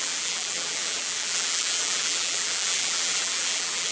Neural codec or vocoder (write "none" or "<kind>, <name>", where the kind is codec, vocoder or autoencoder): vocoder, BigVGAN v2